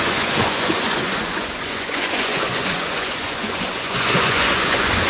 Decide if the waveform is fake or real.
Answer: fake